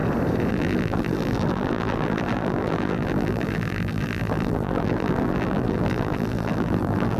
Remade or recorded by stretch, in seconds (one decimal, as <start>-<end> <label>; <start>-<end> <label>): 0.0-0.5 recorded; 0.5-7.2 remade

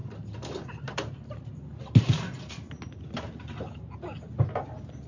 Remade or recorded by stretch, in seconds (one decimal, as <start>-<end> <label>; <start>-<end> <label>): 0.0-5.1 recorded

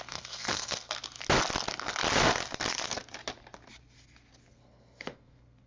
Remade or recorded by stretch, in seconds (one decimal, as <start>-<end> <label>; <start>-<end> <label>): 0.0-1.0 remade; 1.0-4.4 recorded; 4.4-5.7 remade

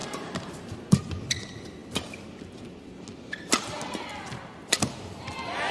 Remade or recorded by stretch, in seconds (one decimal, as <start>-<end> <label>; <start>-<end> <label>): 0.0-1.0 remade; 1.0-5.7 recorded

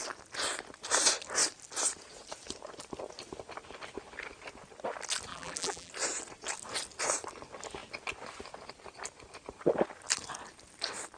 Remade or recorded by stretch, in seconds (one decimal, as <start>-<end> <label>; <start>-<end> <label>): 0.0-5.3 recorded; 5.3-5.9 remade; 5.9-11.2 recorded

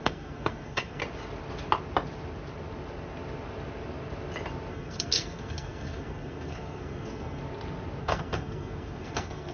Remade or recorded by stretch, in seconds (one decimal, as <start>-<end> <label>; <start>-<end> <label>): 0.0-1.0 remade; 1.0-4.7 recorded; 4.7-7.4 remade; 7.4-8.0 recorded; 8.0-9.5 remade

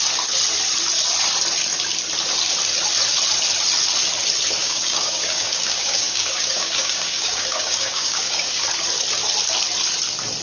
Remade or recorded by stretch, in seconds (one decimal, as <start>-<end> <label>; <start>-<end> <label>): 0.0-4.6 recorded; 4.6-8.6 remade; 8.6-10.4 recorded

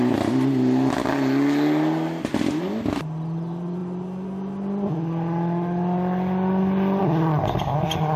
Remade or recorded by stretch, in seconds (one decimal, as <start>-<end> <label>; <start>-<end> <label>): 0.0-8.2 recorded